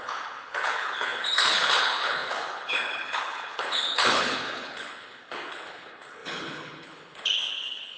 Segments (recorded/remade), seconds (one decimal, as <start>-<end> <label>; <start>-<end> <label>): 0.0-8.0 remade